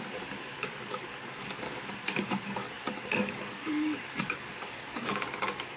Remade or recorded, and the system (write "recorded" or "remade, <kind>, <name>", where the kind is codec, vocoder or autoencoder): remade, codec, DAC